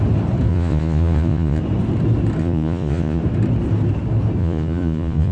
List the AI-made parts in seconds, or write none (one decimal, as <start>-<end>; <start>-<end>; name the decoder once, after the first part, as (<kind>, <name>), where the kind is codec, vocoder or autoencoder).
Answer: 0.5-1.6 (vocoder, Vocos); 2.4-3.2; 4.4-5.3